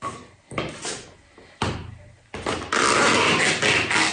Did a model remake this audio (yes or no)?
no